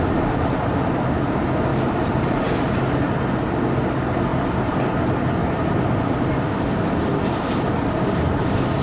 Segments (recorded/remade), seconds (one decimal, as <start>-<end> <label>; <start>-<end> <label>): 0.0-1.7 recorded; 1.7-3.2 remade; 3.2-8.8 recorded